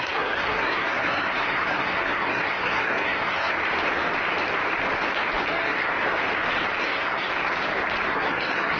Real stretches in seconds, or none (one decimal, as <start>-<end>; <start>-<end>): 3.5-5.5; 5.9-6.8; 7.3-8.1